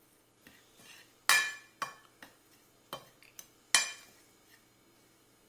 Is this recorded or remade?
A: recorded